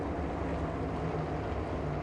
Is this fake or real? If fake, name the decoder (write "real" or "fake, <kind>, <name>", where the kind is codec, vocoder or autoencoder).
real